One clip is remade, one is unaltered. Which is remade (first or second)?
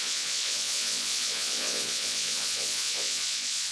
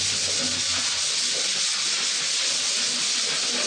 first